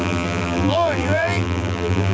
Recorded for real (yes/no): no